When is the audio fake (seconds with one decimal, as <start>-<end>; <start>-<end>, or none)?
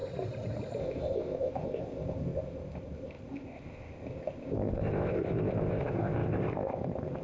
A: 0.8-7.2